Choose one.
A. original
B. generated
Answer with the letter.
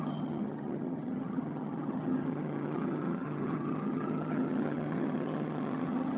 B